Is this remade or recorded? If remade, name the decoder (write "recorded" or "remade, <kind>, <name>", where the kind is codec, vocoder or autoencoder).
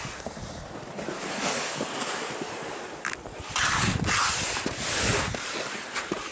recorded